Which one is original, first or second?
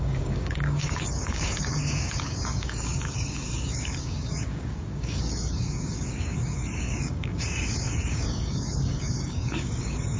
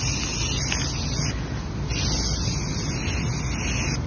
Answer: second